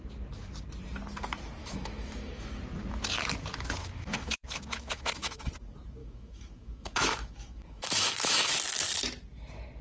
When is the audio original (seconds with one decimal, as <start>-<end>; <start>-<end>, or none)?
0.0-1.6; 2.6-3.8; 5.5-6.0; 8.5-9.8